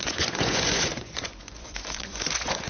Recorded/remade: remade